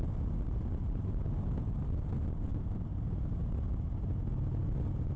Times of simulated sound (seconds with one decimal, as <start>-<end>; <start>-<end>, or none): none